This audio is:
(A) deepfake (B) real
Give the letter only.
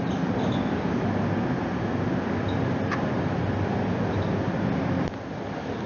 B